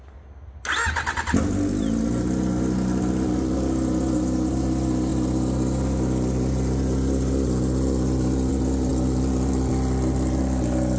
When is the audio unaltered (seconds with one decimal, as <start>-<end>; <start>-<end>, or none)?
0.0-11.0